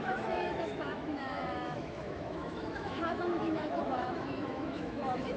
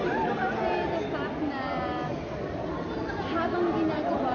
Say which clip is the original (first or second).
second